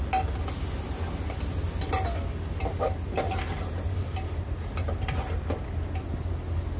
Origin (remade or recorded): recorded